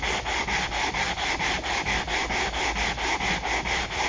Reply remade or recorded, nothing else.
recorded